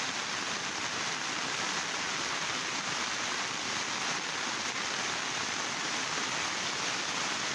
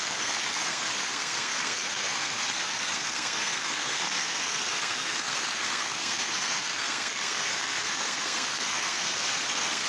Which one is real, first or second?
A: first